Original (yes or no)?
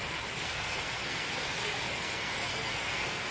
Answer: no